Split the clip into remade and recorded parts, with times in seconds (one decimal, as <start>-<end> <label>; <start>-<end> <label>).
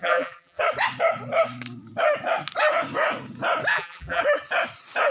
0.0-0.6 remade; 0.6-3.7 recorded; 3.7-4.2 remade; 4.2-5.1 recorded